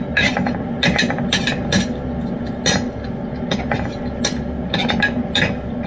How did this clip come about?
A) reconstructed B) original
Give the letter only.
B